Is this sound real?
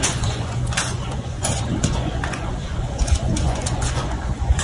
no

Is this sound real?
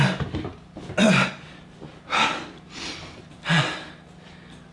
yes